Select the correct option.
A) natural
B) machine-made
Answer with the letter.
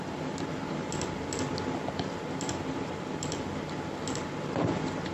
A